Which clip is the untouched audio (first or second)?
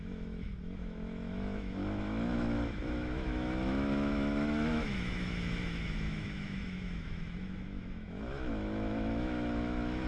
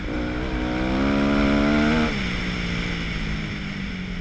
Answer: second